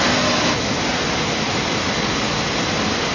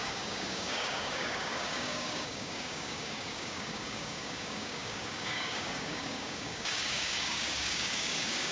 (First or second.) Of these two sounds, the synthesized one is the second